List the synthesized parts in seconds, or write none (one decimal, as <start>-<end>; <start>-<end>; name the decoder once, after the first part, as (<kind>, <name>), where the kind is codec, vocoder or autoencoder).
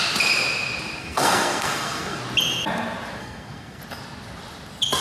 1.0-2.2 (codec, SNAC); 3.2-3.8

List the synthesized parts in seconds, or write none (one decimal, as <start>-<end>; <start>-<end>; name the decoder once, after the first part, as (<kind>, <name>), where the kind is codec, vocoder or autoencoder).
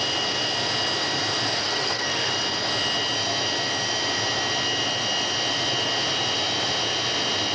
1.6-2.3 (codec, SNAC)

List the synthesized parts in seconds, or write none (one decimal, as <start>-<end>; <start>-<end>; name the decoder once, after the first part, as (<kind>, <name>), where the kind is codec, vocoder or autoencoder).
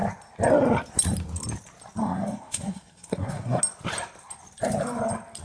2.0-3.6 (codec, SNAC)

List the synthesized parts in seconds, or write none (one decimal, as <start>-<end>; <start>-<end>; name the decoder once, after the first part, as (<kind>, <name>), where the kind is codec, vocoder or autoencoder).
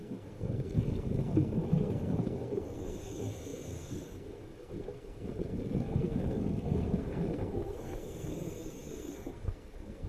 0.0-10.1 (codec, SNAC)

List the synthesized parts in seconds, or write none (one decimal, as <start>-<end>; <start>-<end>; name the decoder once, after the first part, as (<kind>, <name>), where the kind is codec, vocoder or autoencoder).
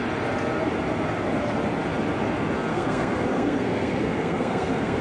2.7-5.0 (codec, SNAC)